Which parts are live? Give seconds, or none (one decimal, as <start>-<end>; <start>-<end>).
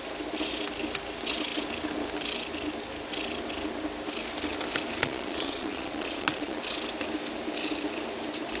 0.0-5.0; 6.6-8.6